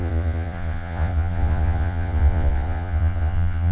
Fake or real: fake